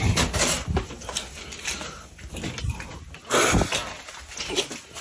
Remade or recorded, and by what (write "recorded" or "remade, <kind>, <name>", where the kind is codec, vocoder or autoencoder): recorded